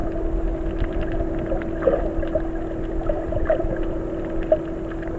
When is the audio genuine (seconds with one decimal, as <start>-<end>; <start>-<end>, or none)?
0.0-5.2